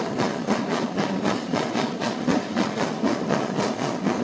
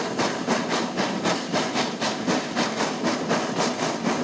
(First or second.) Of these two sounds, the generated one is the first